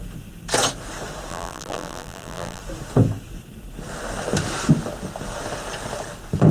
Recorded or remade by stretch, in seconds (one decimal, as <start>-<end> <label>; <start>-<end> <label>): 0.0-1.3 recorded; 1.3-2.6 remade; 2.6-6.5 recorded